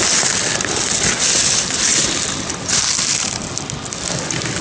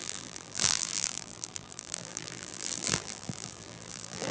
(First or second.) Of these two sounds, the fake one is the second